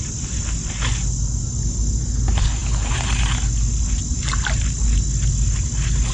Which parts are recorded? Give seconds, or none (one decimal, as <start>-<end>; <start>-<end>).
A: 0.0-6.1